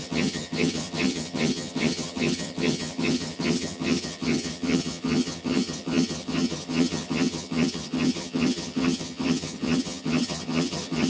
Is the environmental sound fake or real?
fake